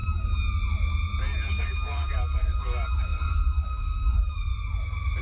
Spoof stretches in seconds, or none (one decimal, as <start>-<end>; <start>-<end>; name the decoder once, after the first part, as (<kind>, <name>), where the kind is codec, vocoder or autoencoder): 1.5-4.5 (codec, DAC)

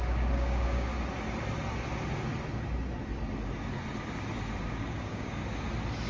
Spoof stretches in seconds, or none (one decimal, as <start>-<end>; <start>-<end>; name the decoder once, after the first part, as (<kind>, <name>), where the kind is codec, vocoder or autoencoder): 0.0-0.9 (codec, DAC); 4.6-5.4

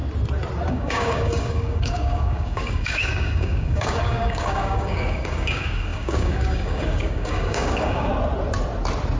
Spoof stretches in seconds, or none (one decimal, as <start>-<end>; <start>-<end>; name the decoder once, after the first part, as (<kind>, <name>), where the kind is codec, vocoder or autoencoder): 0.7-8.1 (codec, DAC)